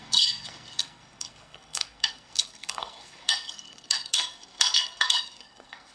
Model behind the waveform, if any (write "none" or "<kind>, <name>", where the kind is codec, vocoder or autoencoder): codec, SNAC